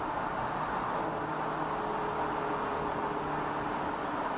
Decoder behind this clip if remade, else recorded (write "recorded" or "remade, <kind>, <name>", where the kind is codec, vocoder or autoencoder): recorded